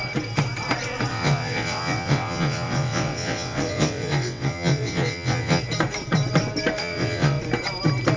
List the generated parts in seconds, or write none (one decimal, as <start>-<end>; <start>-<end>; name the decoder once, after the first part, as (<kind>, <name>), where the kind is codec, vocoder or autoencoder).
1.1-5.6 (vocoder, WaveNeXt); 6.8-7.4